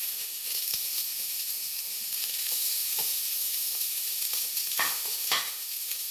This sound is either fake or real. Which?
fake